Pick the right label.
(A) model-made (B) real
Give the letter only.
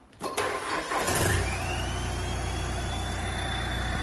B